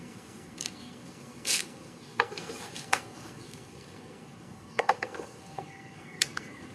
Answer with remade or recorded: remade